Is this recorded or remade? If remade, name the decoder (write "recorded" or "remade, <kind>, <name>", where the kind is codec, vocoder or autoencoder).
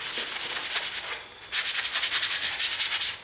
recorded